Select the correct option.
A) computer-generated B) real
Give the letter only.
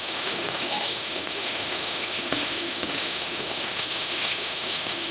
A